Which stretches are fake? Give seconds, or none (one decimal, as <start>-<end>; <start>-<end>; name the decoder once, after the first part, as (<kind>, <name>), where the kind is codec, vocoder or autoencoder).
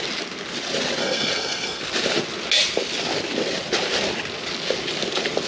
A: 1.0-1.8 (codec, SNAC)